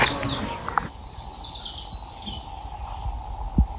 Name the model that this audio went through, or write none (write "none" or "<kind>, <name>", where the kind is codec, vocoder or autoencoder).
none